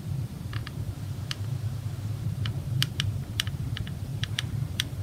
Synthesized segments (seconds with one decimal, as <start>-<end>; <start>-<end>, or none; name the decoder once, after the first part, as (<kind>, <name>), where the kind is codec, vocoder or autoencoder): 0.6-3.6 (vocoder, BigVGAN v2); 4.1-5.0